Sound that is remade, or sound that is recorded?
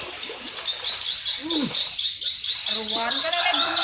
remade